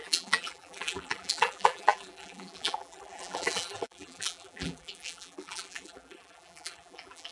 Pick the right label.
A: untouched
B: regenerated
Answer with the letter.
B